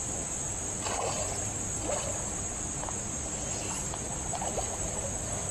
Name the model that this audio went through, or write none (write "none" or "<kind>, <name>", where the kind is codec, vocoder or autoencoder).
none